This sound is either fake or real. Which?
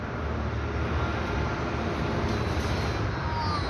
real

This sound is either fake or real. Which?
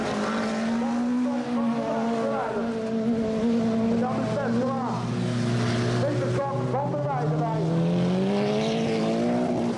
real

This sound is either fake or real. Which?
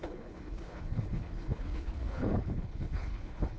fake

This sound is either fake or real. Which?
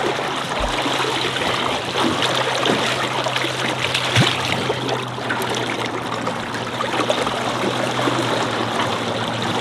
real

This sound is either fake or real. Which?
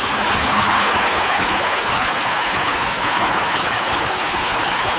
fake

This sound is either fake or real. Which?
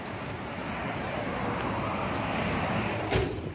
real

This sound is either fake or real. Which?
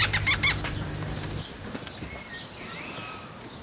real